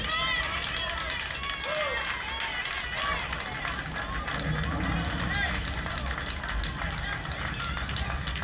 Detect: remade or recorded recorded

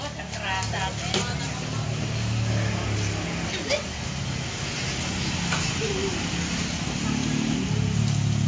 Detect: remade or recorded recorded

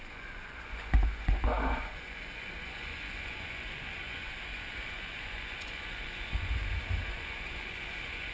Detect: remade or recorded remade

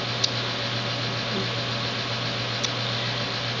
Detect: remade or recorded recorded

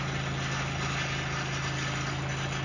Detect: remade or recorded recorded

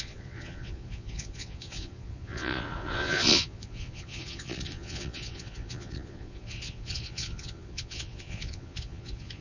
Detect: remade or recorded remade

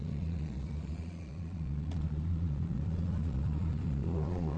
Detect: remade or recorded remade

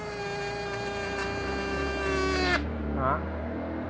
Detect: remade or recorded recorded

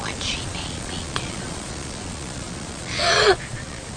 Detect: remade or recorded remade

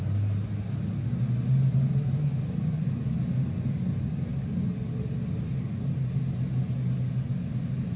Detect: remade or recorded recorded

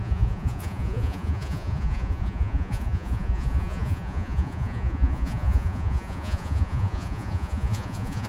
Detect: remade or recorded remade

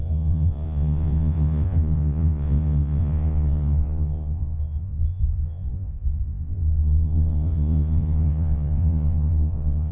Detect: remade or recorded remade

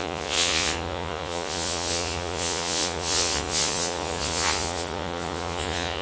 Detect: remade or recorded remade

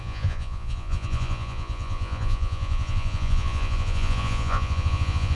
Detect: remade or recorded remade